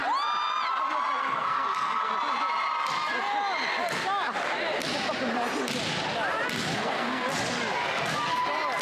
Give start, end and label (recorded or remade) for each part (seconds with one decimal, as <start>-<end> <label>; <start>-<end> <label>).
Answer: 0.0-1.2 recorded; 1.2-2.1 remade; 2.1-6.7 recorded; 6.7-7.3 remade; 7.3-8.8 recorded